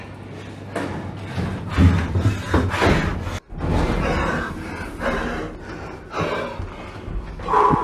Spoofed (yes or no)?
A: no